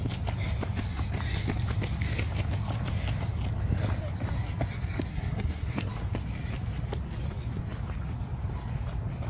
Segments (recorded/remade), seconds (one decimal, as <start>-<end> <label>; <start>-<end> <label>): 0.0-5.1 recorded; 5.1-5.9 remade; 5.9-9.3 recorded